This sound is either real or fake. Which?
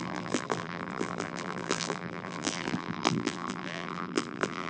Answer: fake